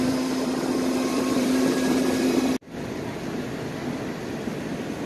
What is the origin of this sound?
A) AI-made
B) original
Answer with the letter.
A